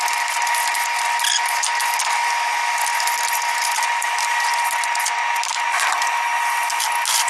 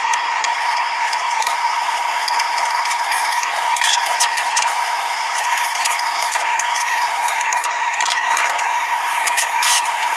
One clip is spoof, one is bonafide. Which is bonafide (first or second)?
first